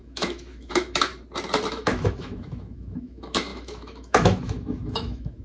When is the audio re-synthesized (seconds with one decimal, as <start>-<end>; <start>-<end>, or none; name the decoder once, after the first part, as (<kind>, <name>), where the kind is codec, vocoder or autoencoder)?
0.0-1.1 (autoencoder, DAC-VAE); 1.7-5.4